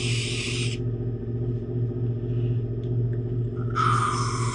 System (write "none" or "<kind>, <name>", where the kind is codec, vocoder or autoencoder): none